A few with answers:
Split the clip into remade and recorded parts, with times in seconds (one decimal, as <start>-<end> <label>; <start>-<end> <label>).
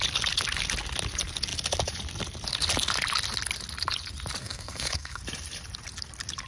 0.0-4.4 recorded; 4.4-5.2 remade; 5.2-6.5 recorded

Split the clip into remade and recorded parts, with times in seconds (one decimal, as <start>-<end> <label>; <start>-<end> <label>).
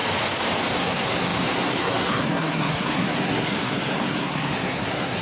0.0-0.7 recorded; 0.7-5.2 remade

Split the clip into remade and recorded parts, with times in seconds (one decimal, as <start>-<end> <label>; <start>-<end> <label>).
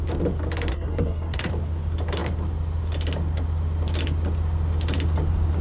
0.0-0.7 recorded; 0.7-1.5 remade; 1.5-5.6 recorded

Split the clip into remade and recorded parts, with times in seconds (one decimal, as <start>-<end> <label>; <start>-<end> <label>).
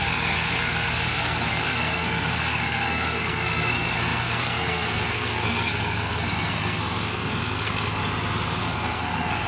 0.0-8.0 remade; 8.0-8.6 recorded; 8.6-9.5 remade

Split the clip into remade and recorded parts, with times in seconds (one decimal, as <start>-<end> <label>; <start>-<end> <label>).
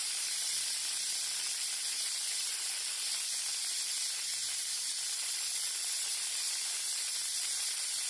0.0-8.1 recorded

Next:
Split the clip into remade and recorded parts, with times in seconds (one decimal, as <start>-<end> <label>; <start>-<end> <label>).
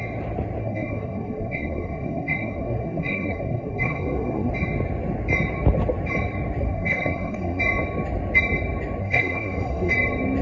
0.0-0.6 recorded; 0.6-4.5 remade; 4.5-6.6 recorded; 6.6-7.6 remade; 7.6-9.0 recorded; 9.0-9.9 remade; 9.9-10.4 recorded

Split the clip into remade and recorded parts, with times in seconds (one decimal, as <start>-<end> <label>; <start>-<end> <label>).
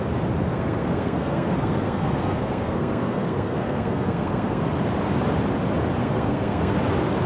0.0-0.5 recorded; 0.5-4.7 remade; 4.7-6.0 recorded; 6.0-6.8 remade; 6.8-7.3 recorded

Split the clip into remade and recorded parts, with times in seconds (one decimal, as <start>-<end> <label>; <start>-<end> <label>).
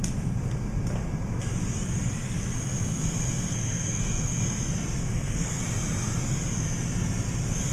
0.0-3.5 recorded; 3.5-4.4 remade; 4.4-5.0 recorded; 5.0-5.6 remade; 5.6-7.7 recorded